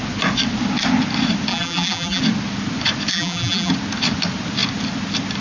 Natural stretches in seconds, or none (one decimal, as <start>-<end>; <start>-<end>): 0.0-1.5; 2.2-3.1; 3.7-5.4